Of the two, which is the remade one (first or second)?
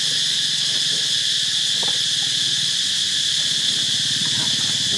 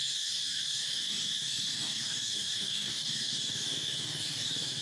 second